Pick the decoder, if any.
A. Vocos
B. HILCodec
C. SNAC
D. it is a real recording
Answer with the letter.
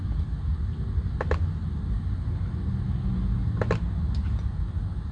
D